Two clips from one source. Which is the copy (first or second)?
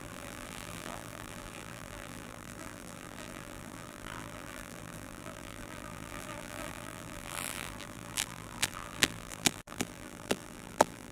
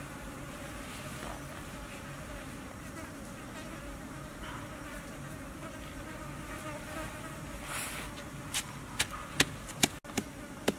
first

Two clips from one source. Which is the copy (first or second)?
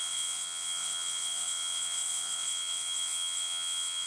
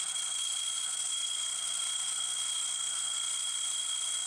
first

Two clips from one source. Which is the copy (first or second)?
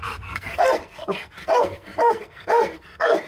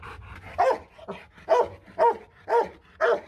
first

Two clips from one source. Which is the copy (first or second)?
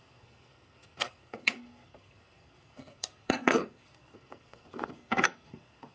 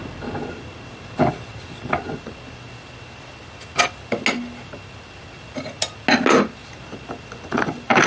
first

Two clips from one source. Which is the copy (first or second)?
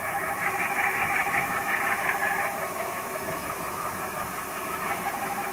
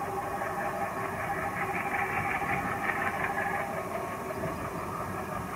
first